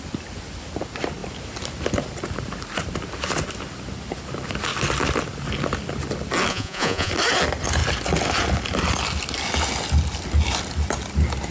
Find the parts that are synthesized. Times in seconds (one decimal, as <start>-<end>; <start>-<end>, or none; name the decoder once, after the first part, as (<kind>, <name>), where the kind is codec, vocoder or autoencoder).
6.5-7.1 (vocoder, Vocos)